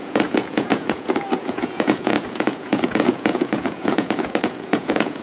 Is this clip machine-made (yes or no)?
yes